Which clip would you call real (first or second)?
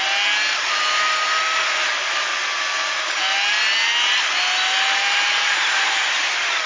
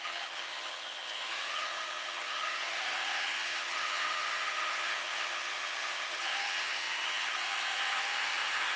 first